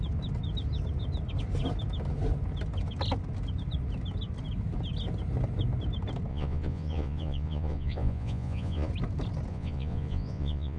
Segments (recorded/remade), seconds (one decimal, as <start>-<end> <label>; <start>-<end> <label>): 0.0-6.3 recorded; 6.3-8.9 remade; 8.9-9.5 recorded; 9.5-10.8 remade